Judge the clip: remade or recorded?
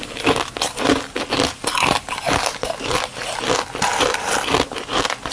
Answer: recorded